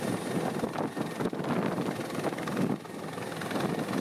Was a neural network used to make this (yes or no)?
no